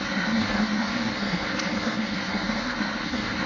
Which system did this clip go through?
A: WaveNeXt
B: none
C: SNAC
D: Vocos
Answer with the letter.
C